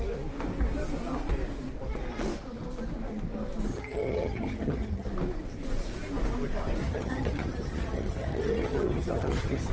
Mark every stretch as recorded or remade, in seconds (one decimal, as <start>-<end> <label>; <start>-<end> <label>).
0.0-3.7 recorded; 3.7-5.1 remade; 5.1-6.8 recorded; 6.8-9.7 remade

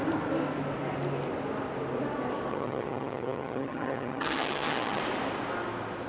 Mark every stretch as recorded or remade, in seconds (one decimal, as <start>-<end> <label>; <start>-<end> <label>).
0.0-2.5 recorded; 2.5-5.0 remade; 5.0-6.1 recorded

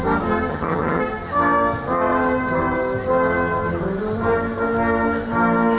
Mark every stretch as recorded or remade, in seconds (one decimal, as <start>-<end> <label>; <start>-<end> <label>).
0.0-0.5 recorded; 0.5-1.0 remade; 1.0-5.8 recorded

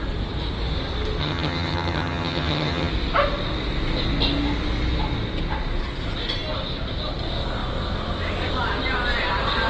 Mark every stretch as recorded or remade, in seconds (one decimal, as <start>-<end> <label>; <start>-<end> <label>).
0.0-1.2 recorded; 1.2-2.9 remade; 2.9-9.7 recorded

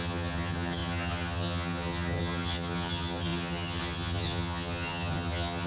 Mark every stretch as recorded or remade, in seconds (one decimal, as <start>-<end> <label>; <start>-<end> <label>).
0.0-5.7 remade

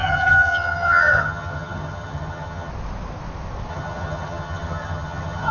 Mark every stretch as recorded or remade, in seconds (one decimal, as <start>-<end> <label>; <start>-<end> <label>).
0.0-2.7 remade; 2.7-3.7 recorded; 3.7-5.5 remade

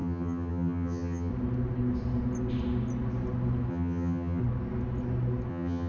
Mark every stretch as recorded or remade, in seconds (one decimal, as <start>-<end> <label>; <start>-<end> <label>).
0.0-1.3 remade; 1.3-3.7 recorded; 3.7-4.4 remade; 4.4-5.5 recorded; 5.5-5.9 remade

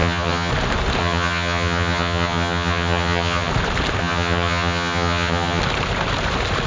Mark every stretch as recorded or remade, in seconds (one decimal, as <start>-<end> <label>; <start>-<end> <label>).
0.0-0.5 remade; 0.5-1.0 recorded; 1.0-3.5 remade; 3.5-4.0 recorded; 4.0-5.6 remade; 5.6-6.7 recorded